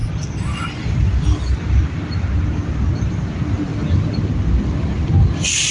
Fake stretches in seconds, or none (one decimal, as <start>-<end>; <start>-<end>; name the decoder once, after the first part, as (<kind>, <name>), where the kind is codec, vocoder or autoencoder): none